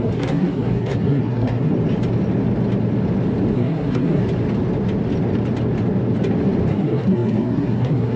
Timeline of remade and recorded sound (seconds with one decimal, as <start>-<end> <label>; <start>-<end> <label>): 0.0-1.7 remade; 1.7-3.5 recorded; 3.5-4.2 remade; 4.2-6.7 recorded; 6.7-8.2 remade